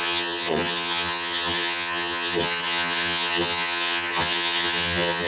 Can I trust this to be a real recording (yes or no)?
no